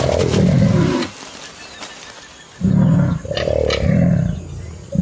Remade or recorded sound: recorded